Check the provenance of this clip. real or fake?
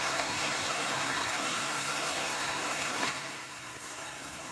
fake